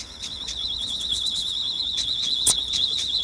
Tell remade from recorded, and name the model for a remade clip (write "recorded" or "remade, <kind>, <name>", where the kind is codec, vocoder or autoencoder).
remade, codec, HILCodec